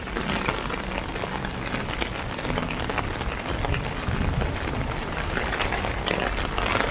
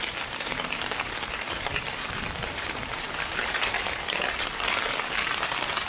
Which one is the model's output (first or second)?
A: second